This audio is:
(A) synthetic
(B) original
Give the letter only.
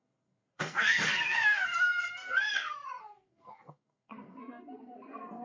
A